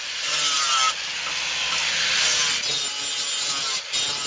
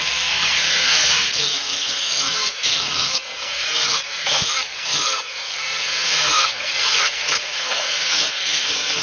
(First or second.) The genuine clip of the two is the first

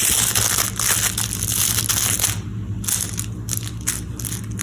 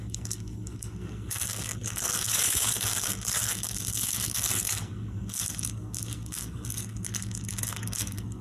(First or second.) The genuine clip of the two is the first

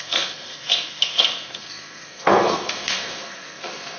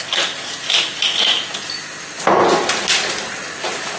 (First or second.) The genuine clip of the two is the second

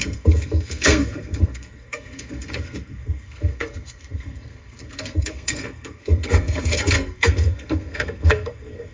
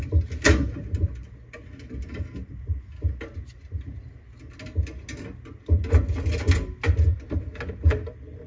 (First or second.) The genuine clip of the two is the second